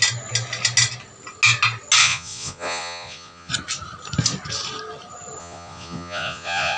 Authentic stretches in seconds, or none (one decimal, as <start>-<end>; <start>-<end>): 0.0-2.0; 3.5-5.4